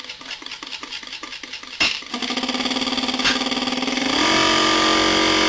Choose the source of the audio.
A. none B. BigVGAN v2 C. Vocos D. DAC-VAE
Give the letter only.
A